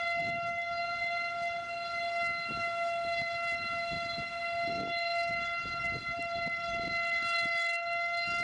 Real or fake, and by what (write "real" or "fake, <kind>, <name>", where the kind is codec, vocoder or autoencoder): real